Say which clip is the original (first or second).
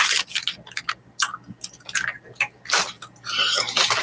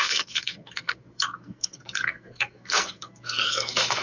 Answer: first